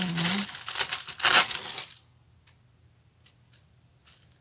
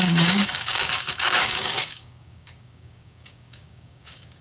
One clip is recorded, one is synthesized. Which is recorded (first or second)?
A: first